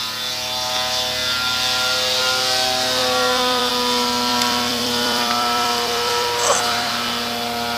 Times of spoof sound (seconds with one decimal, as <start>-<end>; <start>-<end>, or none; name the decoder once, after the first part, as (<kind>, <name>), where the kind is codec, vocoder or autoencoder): 3.0-3.7 (vocoder, BigVGAN v2); 4.3-6.9